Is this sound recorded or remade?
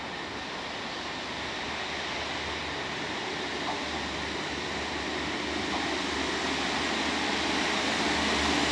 recorded